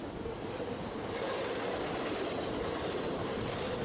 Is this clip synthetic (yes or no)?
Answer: yes